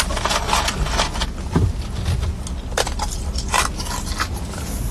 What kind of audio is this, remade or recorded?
recorded